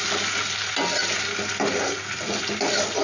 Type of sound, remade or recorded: recorded